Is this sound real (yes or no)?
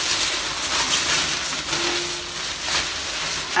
yes